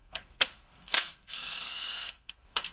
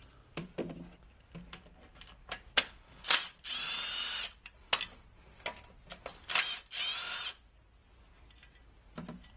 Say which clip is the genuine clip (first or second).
second